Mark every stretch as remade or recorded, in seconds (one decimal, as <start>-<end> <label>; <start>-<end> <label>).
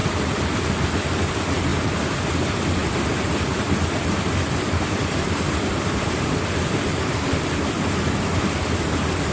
0.0-0.6 remade; 0.6-1.7 recorded; 1.7-2.4 remade; 2.4-2.8 recorded; 2.8-7.1 remade; 7.1-9.3 recorded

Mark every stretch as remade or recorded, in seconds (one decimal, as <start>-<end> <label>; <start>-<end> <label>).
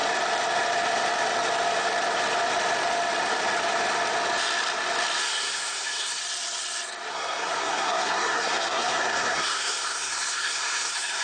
0.0-5.2 recorded; 5.2-6.2 remade; 6.2-7.1 recorded; 7.1-11.2 remade